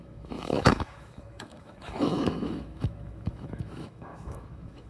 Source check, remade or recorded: remade